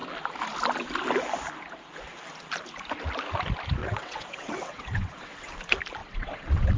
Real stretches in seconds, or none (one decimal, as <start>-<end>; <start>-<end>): 0.0-3.8; 5.5-6.0